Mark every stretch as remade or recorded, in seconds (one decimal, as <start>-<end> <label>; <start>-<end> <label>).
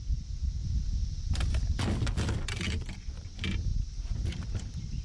0.0-5.0 recorded